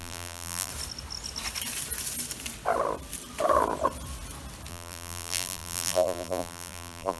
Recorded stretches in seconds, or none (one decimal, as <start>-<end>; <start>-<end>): 0.7-4.7